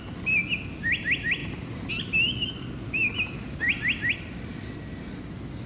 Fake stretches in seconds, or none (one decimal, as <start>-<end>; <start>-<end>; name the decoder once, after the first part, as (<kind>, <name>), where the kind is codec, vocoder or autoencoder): none